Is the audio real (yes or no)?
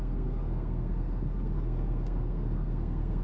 no